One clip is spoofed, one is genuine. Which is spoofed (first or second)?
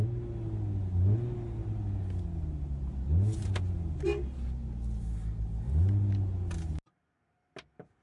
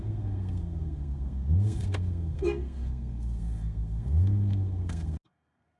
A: second